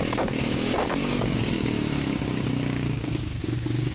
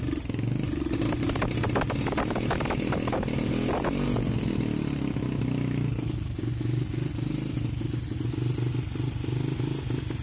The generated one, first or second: first